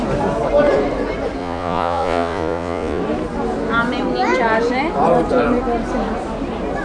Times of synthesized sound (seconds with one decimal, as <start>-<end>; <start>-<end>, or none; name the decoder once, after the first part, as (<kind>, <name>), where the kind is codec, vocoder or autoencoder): 1.4-3.0 (vocoder, Vocos)